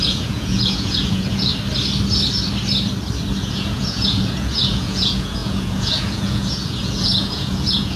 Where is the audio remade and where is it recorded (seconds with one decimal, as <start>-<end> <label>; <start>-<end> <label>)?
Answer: 0.0-1.5 remade; 1.5-3.4 recorded; 3.4-8.0 remade